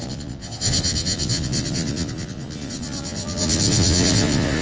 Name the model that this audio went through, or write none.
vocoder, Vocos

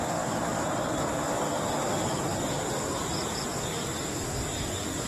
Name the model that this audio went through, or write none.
none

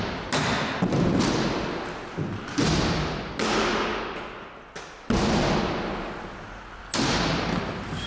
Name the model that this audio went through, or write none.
none